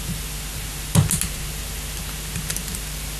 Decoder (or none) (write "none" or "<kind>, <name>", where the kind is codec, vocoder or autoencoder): none